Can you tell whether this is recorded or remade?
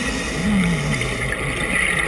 recorded